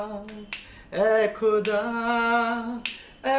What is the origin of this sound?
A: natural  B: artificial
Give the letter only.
A